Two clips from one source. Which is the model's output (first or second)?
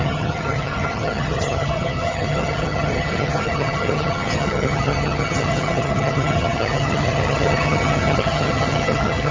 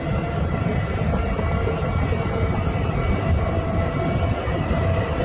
first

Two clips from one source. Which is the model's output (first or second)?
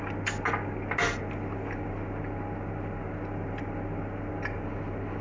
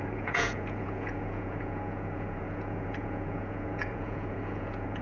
second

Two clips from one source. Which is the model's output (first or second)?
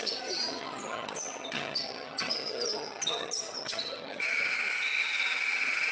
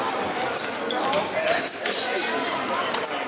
first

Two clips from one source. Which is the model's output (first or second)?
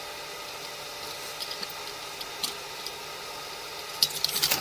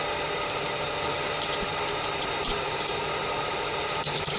second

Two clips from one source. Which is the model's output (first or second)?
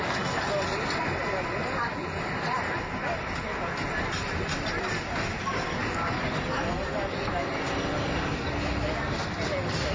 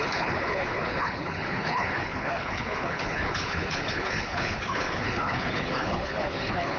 second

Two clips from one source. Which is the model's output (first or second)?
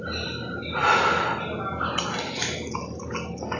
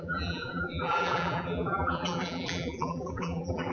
second